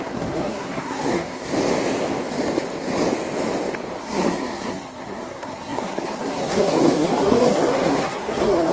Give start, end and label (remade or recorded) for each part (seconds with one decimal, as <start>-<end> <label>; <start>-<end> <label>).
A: 0.0-1.5 remade; 1.5-4.0 recorded; 4.0-8.7 remade